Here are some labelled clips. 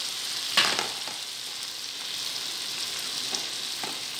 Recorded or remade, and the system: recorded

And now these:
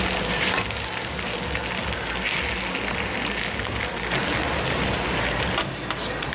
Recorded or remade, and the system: recorded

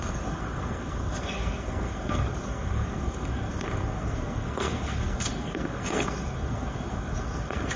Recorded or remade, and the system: remade, codec, SNAC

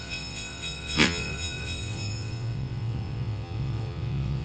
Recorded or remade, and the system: remade, vocoder, WaveNeXt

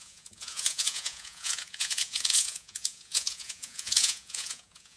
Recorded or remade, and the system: remade, vocoder, Vocos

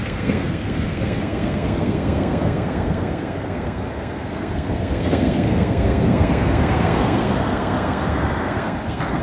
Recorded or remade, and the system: remade, codec, SNAC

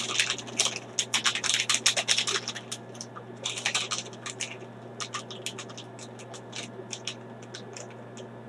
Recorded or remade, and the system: recorded